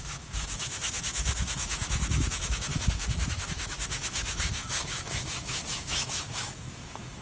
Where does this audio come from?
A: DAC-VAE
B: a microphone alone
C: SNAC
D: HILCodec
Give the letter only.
A